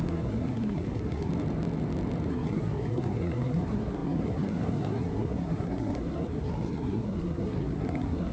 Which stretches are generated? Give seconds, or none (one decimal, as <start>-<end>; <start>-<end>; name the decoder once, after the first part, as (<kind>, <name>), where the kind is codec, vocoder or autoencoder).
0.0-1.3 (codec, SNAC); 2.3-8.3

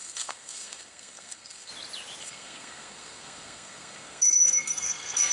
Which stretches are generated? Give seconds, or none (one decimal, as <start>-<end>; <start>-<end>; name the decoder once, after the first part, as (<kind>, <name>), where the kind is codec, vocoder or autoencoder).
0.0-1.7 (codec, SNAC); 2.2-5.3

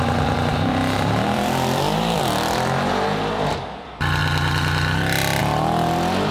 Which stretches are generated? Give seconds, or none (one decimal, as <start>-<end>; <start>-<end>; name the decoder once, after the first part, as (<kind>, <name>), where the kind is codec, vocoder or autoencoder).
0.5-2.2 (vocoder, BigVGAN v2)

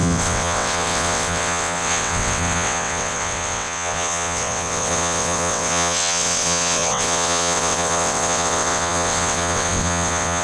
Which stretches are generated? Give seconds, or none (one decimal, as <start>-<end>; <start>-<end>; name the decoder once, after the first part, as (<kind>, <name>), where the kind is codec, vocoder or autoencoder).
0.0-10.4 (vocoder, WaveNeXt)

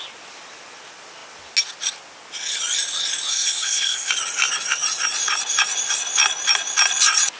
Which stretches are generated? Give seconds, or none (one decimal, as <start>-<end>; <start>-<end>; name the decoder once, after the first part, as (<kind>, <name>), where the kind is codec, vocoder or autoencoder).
3.3-4.1 (codec, ZipCodec)

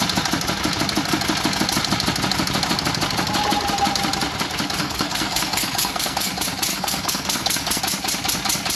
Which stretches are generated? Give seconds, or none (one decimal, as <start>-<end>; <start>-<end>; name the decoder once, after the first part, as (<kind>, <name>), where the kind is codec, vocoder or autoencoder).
4.8-6.3 (codec, SNAC); 6.7-7.8